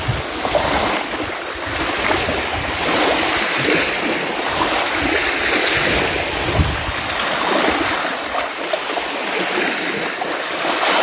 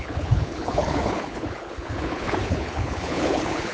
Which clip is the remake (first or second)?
second